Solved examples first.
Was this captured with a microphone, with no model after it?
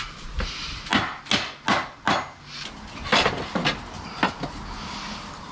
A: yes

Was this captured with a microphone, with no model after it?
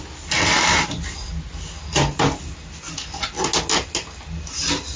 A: yes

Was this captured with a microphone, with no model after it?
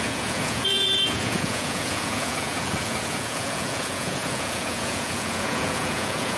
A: no